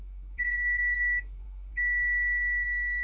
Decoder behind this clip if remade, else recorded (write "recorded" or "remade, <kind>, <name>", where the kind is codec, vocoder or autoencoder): remade, autoencoder, DAC-VAE